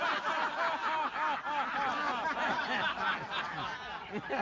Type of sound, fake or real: real